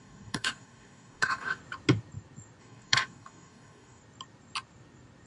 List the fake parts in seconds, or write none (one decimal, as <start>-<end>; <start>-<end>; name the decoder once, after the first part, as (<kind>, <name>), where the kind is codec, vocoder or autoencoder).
0.0-1.6 (codec, DAC); 2.6-4.0